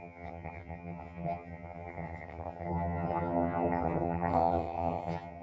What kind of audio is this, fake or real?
fake